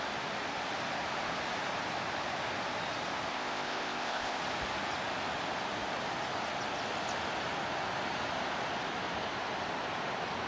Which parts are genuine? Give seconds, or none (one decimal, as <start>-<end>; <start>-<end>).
0.0-3.3; 4.4-10.5